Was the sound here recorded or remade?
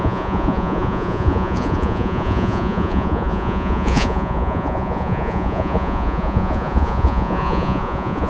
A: remade